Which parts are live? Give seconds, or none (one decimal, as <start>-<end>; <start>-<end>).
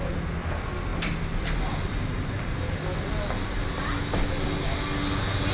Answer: 0.0-5.5